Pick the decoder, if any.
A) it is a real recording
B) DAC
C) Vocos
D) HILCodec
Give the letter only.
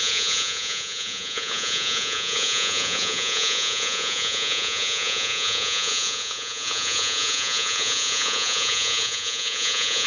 C